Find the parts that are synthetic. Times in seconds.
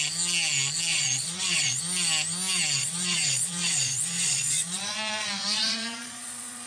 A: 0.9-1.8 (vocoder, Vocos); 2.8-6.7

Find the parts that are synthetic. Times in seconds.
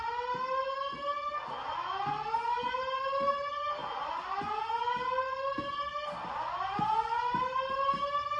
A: none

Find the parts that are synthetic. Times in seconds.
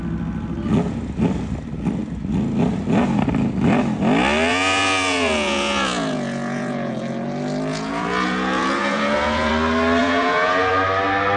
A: 4.5-6.9 (vocoder, Vocos); 7.7-9.5; 10.0-10.7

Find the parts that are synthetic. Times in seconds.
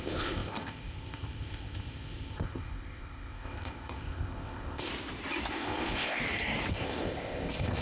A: 0.0-4.9 (codec, ZipCodec); 5.5-6.2; 6.7-7.8